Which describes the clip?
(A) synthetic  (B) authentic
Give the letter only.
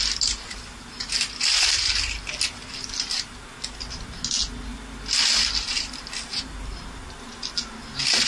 B